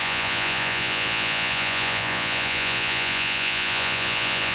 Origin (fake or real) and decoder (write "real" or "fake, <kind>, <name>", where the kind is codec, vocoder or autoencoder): fake, vocoder, Vocos